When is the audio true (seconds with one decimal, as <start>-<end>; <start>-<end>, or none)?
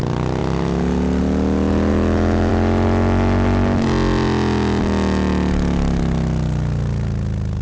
0.0-1.9; 2.5-7.6